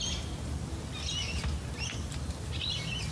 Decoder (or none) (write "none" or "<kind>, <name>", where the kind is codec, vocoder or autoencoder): none